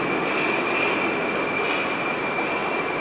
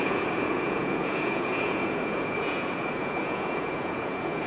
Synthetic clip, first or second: second